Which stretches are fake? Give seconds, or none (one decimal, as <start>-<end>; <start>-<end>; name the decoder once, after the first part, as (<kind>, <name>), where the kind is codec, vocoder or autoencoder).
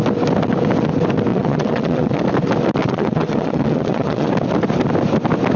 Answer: 1.3-2.2 (vocoder, WaveNeXt); 2.8-4.3